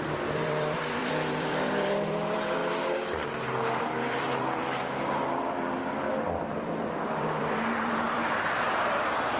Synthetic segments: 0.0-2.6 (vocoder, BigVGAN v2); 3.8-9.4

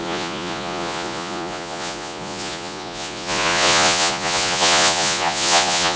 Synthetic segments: 0.0-6.0 (vocoder, Vocos)

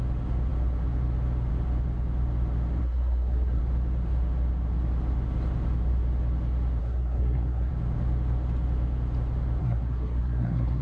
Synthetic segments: 2.8-3.6 (codec, SNAC); 6.8-7.7; 9.6-10.8

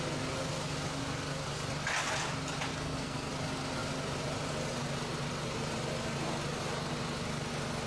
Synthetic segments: 2.7-3.3 (codec, SNAC)

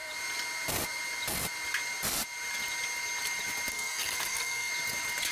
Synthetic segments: 3.7-4.7 (codec, SNAC)

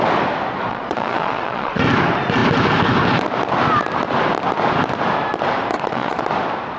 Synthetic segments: 0.7-1.8 (vocoder, Vocos); 5.7-6.3

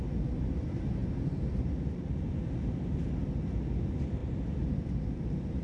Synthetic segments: 1.0-2.2 (vocoder, BigVGAN v2)